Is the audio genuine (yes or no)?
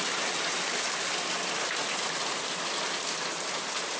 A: yes